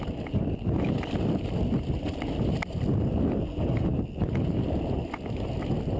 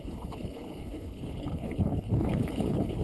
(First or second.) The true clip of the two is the first